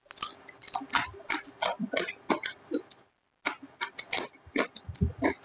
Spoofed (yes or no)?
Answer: no